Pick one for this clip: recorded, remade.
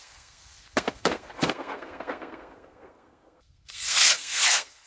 remade